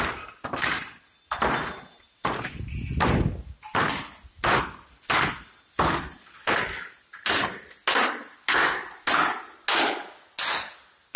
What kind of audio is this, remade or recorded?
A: recorded